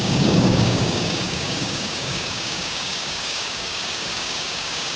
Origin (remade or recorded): remade